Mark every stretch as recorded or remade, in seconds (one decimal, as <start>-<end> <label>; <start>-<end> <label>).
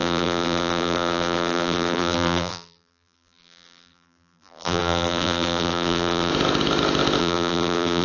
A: 0.0-6.3 remade; 6.3-7.2 recorded; 7.2-8.0 remade